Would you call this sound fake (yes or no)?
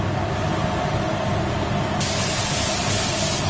no